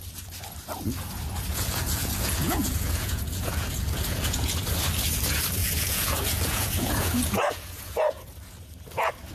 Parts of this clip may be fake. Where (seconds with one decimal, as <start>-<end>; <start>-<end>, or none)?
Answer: 1.5-4.6; 5.6-8.3